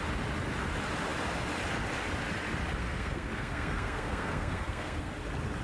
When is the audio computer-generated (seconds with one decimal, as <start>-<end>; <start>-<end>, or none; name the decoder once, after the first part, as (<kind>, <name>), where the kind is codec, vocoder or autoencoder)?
2.8-5.1 (codec, SNAC)